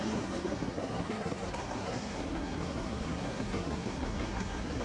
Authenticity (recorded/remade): remade